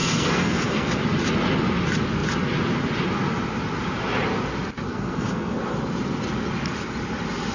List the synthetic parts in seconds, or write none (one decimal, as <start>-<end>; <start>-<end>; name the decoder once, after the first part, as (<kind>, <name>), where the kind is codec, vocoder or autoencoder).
0.0-0.9 (codec, SNAC); 4.9-5.6